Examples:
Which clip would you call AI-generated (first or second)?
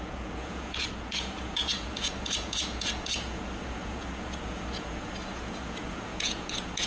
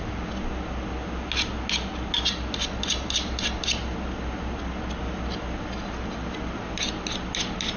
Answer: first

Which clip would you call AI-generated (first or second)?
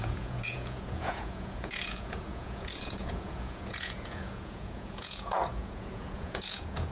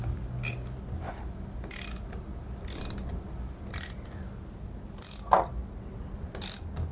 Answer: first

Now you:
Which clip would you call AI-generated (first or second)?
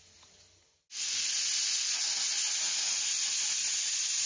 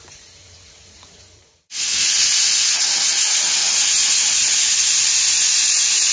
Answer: second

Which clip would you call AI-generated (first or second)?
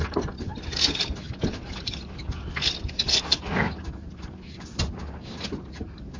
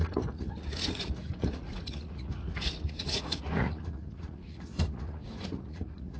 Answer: second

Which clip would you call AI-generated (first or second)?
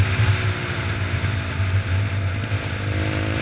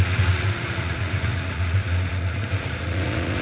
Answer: second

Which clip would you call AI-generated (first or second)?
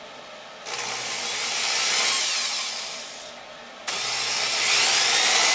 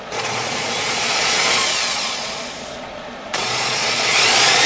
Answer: second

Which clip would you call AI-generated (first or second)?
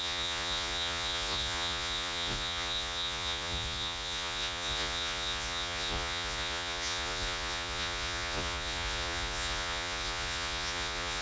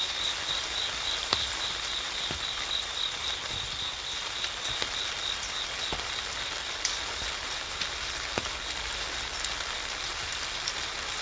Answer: first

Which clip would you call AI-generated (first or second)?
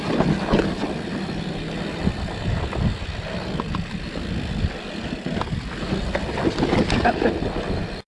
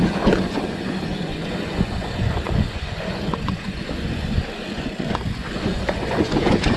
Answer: second